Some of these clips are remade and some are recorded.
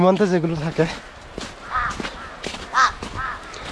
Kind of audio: recorded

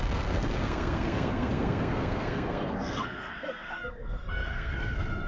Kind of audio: remade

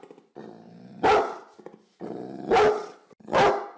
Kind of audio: recorded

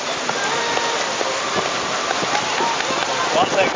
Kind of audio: recorded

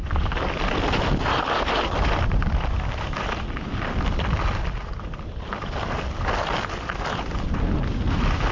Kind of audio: recorded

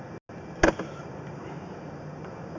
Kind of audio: recorded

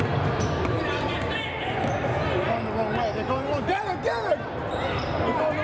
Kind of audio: recorded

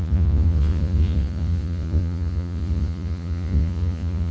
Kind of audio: remade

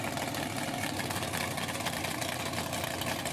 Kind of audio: recorded